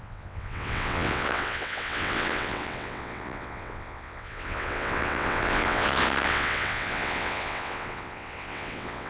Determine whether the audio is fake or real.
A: fake